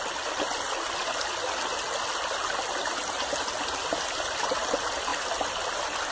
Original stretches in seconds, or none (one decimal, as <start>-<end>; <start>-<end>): 0.0-6.1